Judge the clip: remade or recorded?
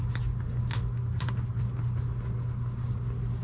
recorded